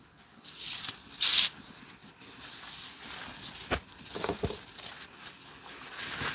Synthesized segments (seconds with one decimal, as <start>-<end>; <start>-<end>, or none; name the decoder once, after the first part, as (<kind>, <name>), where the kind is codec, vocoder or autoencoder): none